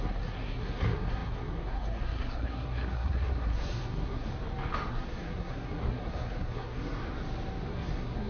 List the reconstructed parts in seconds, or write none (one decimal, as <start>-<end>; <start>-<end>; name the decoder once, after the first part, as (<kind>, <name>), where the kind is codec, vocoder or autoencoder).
0.0-4.3 (codec, SNAC); 4.9-7.0; 7.7-8.3